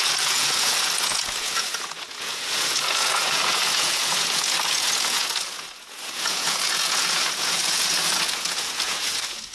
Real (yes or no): no